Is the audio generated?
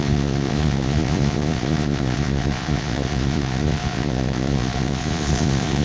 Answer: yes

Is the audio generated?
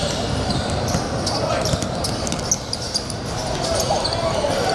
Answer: no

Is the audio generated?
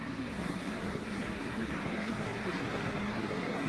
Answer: yes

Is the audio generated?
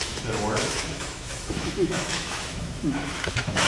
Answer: yes